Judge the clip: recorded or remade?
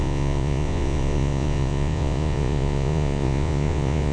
remade